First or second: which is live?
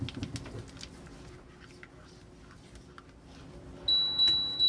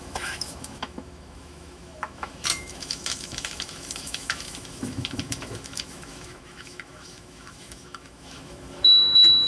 first